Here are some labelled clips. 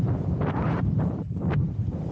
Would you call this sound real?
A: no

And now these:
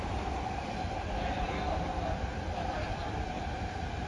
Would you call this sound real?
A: no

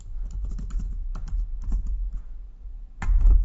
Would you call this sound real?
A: no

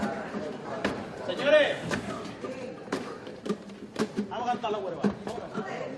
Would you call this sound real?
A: no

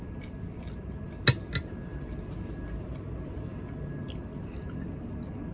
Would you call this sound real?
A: yes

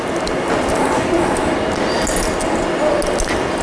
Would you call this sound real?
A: yes